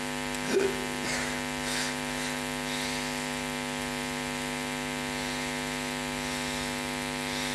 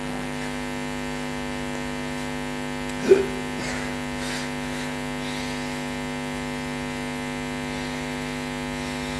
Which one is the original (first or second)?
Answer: second